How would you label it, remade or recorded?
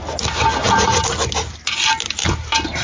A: recorded